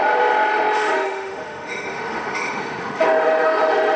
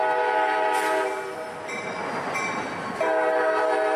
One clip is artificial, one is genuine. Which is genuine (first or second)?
second